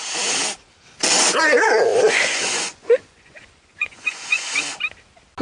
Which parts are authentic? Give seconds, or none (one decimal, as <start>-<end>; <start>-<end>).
0.0-1.9; 4.6-5.4